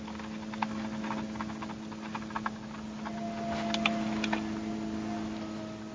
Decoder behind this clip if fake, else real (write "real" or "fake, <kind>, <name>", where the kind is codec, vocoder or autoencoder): real